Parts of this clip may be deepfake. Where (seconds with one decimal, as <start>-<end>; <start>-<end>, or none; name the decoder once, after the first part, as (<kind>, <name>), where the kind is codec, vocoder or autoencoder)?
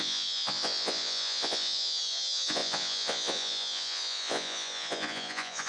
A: 0.0-5.7 (vocoder, Vocos)